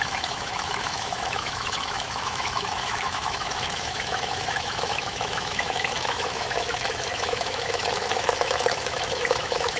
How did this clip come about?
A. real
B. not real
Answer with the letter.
B